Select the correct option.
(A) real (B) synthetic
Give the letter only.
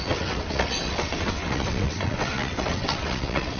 B